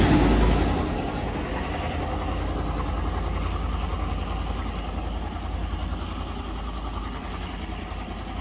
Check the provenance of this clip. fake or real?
real